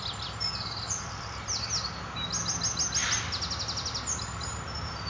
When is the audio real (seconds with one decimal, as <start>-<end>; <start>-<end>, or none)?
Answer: 0.0-5.1